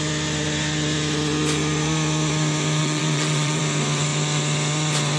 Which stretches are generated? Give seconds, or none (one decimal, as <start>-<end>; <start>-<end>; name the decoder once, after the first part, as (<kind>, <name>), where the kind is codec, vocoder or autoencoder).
2.8-3.6 (vocoder, WaveNeXt)

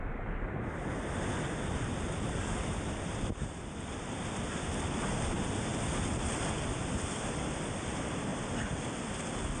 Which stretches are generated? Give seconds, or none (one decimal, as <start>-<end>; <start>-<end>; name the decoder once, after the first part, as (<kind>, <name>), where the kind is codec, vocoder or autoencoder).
8.3-9.1 (vocoder, BigVGAN v2)

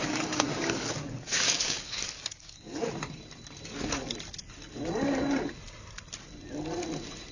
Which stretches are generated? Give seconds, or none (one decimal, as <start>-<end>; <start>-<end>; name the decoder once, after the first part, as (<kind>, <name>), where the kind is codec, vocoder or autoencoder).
0.0-2.9 (codec, DAC)

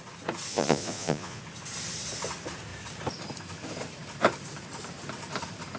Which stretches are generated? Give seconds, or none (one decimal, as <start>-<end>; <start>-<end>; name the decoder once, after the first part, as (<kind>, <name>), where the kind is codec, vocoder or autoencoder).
0.5-1.4 (vocoder, Vocos)

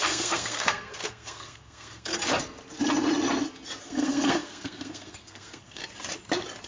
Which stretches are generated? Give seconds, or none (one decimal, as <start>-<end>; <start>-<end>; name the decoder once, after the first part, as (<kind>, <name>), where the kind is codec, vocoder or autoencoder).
0.0-2.1 (codec, SNAC); 3.8-5.8

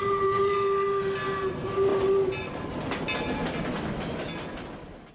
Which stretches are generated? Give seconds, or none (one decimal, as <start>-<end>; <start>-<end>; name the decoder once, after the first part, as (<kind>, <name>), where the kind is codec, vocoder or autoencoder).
none

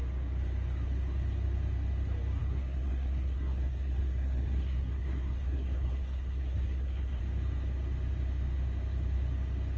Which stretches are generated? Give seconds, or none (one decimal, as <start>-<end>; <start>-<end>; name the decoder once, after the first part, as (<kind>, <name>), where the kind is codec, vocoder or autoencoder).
2.4-7.2 (codec, SNAC)